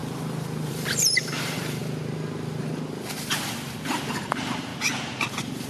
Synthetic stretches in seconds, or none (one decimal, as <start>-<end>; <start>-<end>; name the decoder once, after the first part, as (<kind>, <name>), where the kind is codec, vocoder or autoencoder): 0.7-1.8 (vocoder, BigVGAN v2); 4.1-4.7; 5.3-5.7